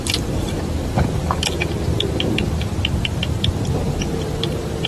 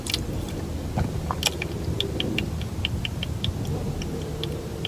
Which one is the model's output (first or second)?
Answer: first